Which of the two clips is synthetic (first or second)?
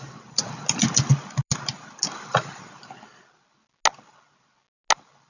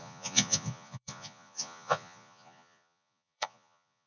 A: second